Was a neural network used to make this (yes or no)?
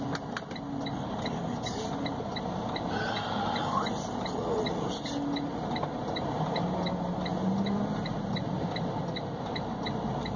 no